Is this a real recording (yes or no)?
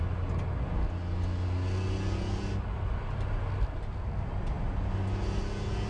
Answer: yes